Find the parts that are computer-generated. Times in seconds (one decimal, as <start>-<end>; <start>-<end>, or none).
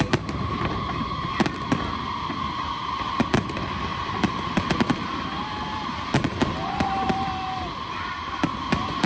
3.9-7.3